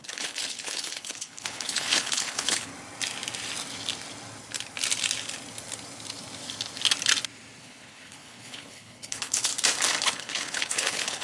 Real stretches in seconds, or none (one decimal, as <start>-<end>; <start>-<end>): 2.7-7.6; 9.5-10.1